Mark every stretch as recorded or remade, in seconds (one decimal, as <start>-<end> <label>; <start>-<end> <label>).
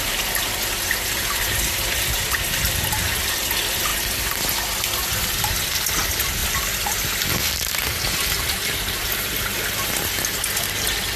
0.0-11.2 recorded